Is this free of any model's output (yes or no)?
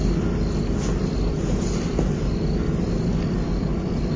yes